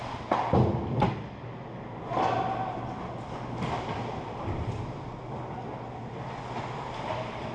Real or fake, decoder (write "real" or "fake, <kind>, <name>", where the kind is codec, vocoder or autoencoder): real